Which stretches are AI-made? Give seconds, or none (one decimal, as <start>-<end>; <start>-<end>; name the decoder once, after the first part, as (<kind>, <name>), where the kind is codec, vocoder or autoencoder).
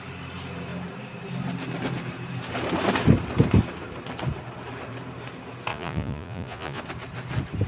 5.7-6.8 (vocoder, Vocos)